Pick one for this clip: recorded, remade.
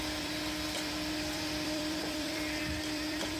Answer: remade